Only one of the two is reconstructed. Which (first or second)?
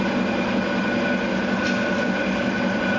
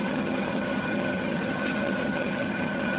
second